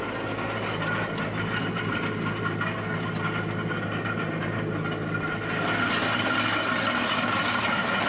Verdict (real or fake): real